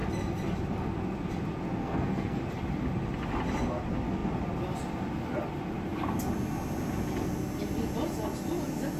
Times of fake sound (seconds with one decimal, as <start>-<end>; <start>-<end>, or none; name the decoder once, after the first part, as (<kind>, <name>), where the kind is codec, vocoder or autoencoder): 1.8-2.4 (codec, SNAC)